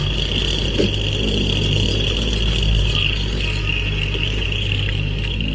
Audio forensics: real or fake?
real